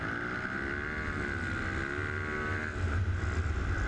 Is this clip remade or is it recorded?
recorded